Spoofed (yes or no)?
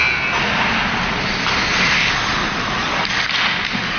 no